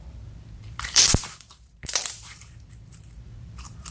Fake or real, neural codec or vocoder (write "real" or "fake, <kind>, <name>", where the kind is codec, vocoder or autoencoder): fake, vocoder, BigVGAN v2